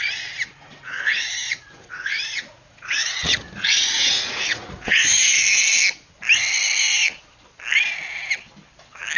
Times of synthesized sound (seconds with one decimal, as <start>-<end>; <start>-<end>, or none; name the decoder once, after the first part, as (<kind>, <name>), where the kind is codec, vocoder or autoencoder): 0.0-5.0 (vocoder, Vocos)